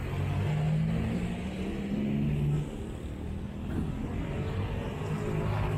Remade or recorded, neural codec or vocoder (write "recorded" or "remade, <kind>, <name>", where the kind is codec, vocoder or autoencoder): recorded